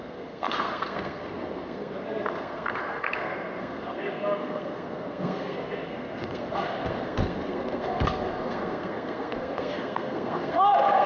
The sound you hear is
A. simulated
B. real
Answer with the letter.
A